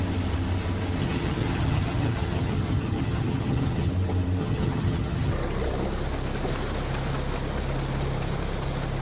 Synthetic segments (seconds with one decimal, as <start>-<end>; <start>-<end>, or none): 1.0-3.9; 4.4-5.3